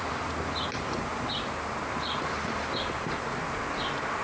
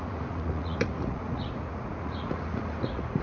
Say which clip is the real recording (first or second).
first